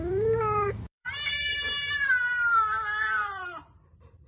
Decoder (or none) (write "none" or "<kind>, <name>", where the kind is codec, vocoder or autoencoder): vocoder, BigVGAN v2